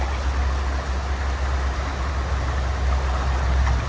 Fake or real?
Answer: real